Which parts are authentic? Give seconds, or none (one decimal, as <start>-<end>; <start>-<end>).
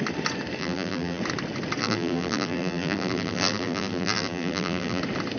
0.0-0.6; 1.2-1.8; 5.0-5.4